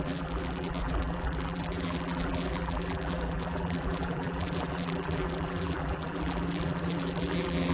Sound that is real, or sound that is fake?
fake